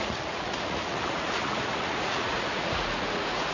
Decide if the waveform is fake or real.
fake